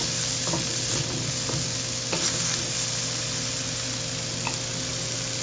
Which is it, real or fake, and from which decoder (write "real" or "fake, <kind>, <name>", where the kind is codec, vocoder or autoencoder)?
real